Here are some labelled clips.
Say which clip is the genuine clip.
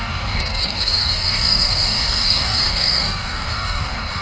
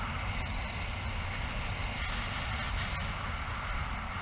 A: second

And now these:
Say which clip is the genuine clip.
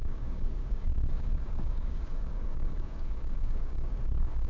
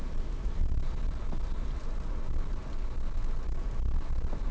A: second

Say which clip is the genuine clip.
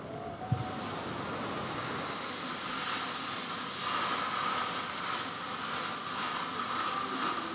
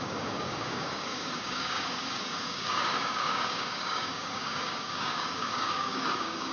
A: first